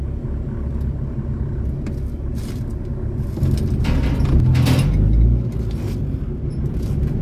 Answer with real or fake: real